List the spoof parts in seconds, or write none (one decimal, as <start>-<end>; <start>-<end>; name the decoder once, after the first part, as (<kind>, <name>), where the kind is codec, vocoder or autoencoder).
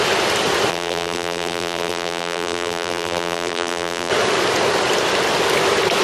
0.7-4.1 (vocoder, BigVGAN v2)